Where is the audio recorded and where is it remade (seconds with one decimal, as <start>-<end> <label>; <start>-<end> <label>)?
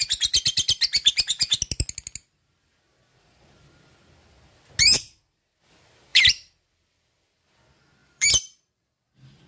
0.0-6.1 recorded; 6.1-7.3 remade; 7.3-8.0 recorded; 8.0-9.1 remade; 9.1-9.5 recorded